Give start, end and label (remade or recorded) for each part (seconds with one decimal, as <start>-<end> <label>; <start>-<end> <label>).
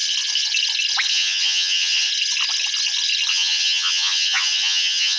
0.0-1.1 recorded; 1.1-2.1 remade; 2.1-3.3 recorded; 3.3-5.2 remade